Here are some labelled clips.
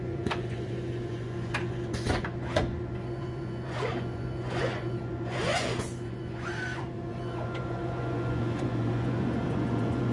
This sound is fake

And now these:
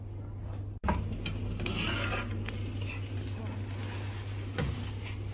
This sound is real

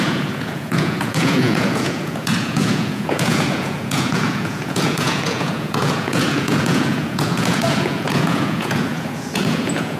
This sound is fake